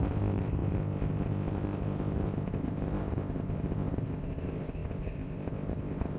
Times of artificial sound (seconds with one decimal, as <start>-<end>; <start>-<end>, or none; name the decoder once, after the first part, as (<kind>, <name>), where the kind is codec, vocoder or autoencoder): 0.0-6.2 (codec, ZipCodec)